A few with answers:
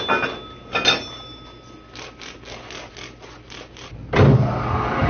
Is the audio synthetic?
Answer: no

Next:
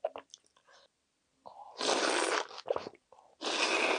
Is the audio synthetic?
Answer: no